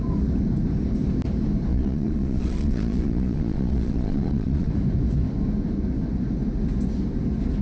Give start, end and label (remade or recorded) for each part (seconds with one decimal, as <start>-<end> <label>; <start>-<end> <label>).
0.0-1.7 recorded; 1.7-4.7 remade; 4.7-7.6 recorded